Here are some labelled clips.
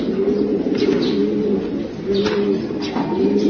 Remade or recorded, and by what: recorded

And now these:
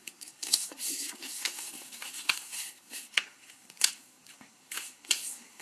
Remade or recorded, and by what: remade, codec, SNAC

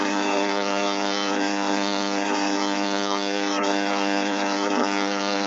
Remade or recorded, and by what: remade, codec, SNAC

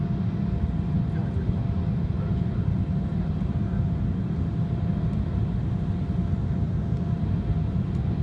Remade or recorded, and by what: recorded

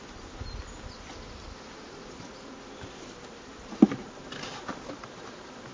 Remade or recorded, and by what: recorded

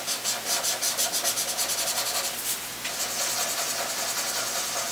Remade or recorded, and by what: recorded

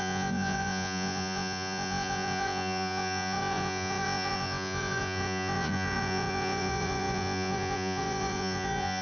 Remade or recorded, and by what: remade, vocoder, Vocos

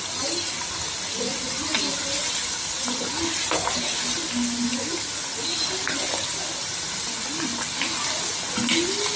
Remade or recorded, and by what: recorded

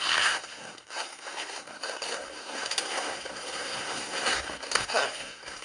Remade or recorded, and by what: remade, codec, SNAC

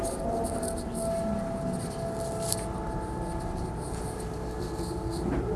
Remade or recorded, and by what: recorded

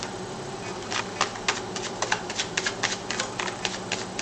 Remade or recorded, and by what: recorded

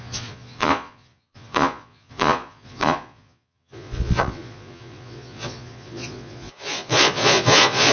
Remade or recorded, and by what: remade, vocoder, Vocos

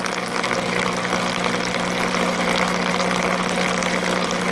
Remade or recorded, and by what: recorded